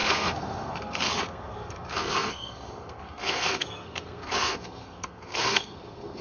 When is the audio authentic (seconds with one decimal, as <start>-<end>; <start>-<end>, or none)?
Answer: none